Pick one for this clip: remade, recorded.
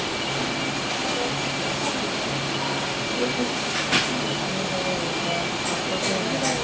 recorded